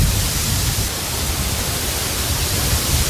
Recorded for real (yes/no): yes